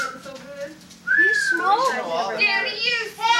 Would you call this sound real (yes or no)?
yes